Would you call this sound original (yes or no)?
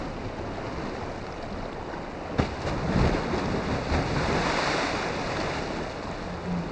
yes